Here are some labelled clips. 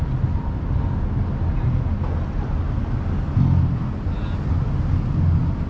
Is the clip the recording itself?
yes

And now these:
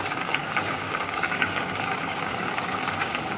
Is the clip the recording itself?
no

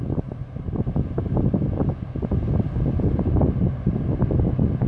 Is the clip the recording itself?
yes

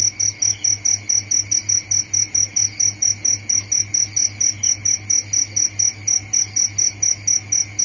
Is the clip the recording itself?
yes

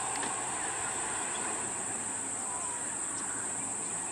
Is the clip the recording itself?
yes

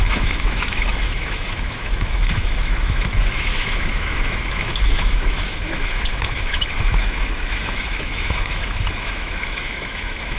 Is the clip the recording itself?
no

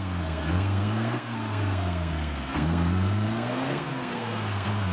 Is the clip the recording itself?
no